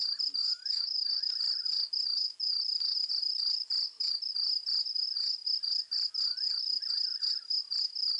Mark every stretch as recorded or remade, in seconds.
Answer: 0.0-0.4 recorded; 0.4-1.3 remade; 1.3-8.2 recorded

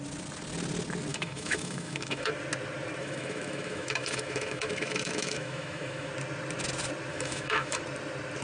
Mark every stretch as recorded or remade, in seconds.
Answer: 0.0-1.1 recorded; 1.1-2.3 remade; 2.3-3.0 recorded; 3.0-6.1 remade; 6.1-7.1 recorded; 7.1-7.8 remade; 7.8-8.4 recorded

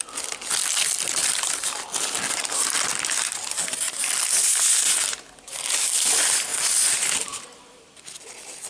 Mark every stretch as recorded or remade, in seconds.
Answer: 0.0-8.7 recorded